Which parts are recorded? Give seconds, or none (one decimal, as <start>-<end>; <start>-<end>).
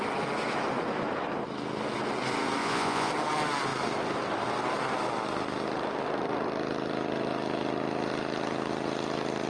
0.0-2.6; 3.1-9.5